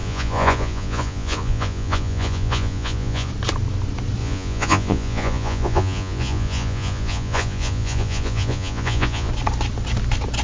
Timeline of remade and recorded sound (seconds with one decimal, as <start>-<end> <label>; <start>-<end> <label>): 0.0-3.3 remade; 3.3-4.2 recorded; 4.2-9.3 remade; 9.3-10.4 recorded

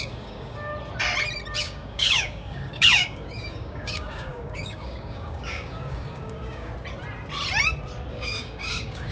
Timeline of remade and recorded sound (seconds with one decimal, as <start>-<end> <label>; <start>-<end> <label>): 0.0-0.7 remade; 0.7-1.6 recorded; 1.6-6.7 remade; 6.7-8.1 recorded; 8.1-9.1 remade

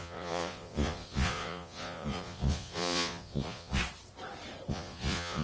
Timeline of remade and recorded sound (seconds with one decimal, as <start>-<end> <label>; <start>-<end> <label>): 0.0-3.8 remade; 3.8-4.7 recorded; 4.7-5.4 remade

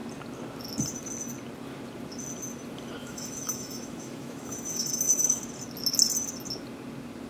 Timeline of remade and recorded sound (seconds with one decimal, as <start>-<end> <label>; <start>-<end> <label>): 0.0-3.0 recorded; 3.0-5.4 remade; 5.4-7.3 recorded

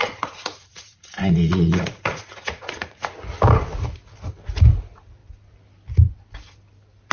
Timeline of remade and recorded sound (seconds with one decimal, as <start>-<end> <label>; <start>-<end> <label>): 0.0-3.1 remade; 3.1-7.1 recorded

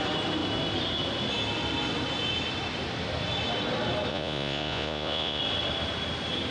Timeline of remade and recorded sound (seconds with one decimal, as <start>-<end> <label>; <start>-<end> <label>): 0.0-4.1 recorded; 4.1-5.4 remade; 5.4-6.5 recorded

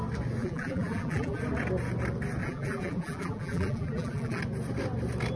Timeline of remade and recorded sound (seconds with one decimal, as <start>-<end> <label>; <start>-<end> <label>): 0.0-0.4 recorded; 0.4-1.4 remade; 1.4-2.4 recorded; 2.4-4.4 remade; 4.4-5.4 recorded